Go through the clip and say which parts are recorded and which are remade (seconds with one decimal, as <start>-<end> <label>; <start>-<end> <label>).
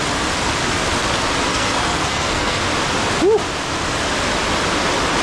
0.0-1.5 recorded; 1.5-2.6 remade; 2.6-5.2 recorded